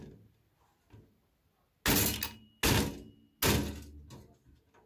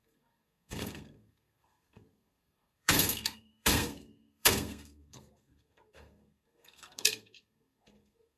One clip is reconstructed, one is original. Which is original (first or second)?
first